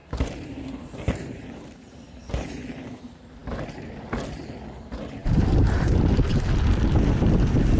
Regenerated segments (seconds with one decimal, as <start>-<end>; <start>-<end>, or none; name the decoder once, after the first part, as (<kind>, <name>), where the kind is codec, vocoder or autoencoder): 0.0-2.3 (vocoder, BigVGAN v2); 5.2-6.0